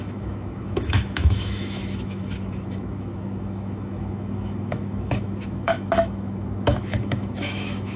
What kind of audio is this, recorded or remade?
remade